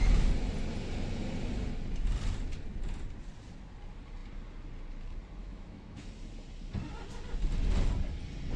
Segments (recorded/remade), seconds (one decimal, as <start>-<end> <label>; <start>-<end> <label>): 0.0-5.4 recorded; 5.4-6.1 remade; 6.1-8.6 recorded